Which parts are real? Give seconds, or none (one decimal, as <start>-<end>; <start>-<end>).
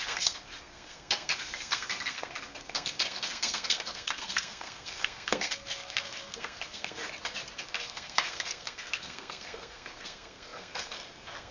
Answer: 7.0-7.6